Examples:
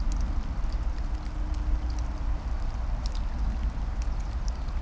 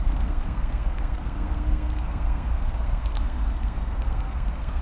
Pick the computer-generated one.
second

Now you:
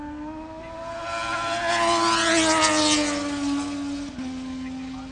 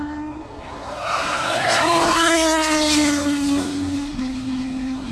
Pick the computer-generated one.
second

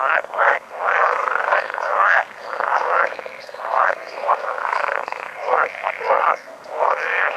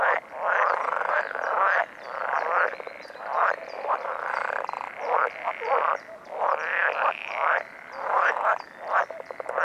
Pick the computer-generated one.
first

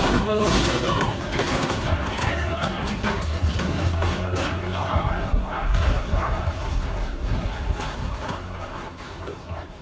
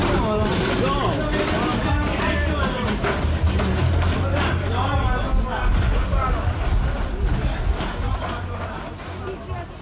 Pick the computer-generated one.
first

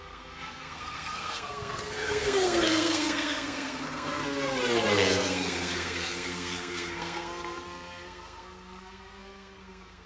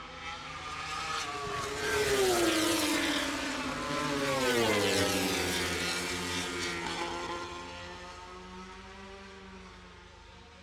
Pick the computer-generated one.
first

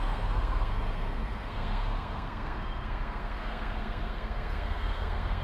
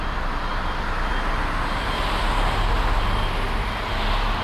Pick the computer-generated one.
first